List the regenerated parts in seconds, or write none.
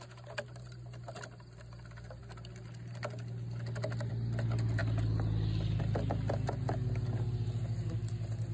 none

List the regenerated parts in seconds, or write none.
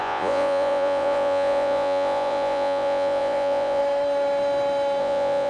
0.0-3.8 (vocoder, Vocos); 5.0-5.5